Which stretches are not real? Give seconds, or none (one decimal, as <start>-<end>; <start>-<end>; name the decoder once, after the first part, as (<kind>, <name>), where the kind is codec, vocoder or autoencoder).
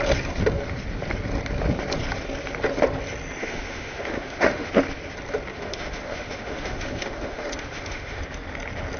3.4-4.7 (autoencoder, DAC-VAE); 5.5-8.2